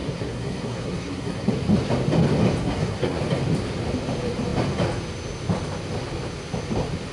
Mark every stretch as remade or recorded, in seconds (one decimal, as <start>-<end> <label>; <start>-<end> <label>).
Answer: 0.0-1.5 remade; 1.5-2.6 recorded; 2.6-3.2 remade; 3.2-7.1 recorded